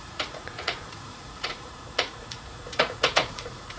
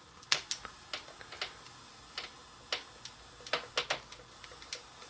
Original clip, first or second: second